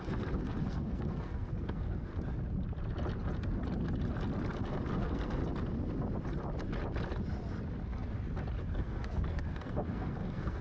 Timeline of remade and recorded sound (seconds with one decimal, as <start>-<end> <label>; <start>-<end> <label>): 0.0-2.1 remade; 2.1-5.0 recorded; 5.0-5.4 remade; 5.4-8.6 recorded; 8.6-10.6 remade